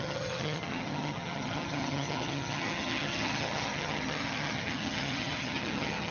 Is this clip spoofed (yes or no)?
yes